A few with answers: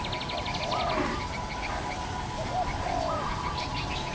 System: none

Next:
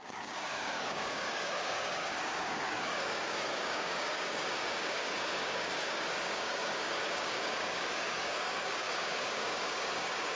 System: codec, DAC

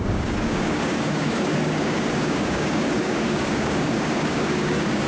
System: codec, DAC